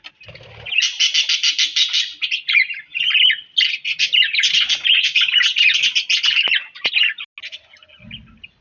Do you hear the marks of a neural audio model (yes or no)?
no